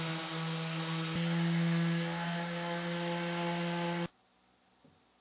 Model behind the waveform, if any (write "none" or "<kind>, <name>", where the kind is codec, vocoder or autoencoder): none